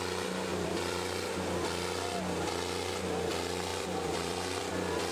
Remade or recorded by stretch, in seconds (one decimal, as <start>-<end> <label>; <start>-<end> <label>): 0.0-0.5 recorded; 0.5-1.3 remade; 1.3-3.7 recorded; 3.7-5.1 remade